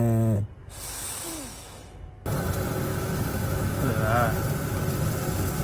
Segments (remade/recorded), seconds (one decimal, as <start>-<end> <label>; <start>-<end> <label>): 0.0-0.6 recorded; 0.6-2.1 remade; 2.1-2.9 recorded; 2.9-3.9 remade; 3.9-5.6 recorded